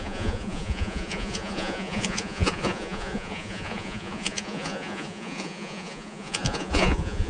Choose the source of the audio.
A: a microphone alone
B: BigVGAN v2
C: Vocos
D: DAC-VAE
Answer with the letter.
C